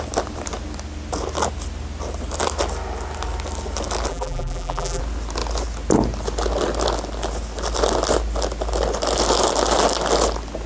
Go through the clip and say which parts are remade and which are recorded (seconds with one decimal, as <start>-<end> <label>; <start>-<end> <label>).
0.0-4.1 recorded; 4.1-5.0 remade; 5.0-10.7 recorded